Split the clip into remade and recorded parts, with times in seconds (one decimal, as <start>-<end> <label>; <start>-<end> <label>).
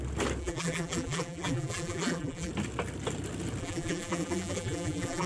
0.0-0.4 recorded; 0.4-2.5 remade; 2.5-3.6 recorded; 3.6-5.3 remade